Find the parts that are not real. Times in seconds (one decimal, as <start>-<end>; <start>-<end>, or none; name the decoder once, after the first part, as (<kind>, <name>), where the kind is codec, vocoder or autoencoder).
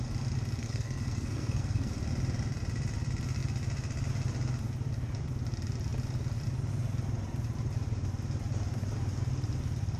0.6-1.9 (codec, SNAC)